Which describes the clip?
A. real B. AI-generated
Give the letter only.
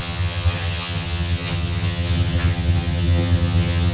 B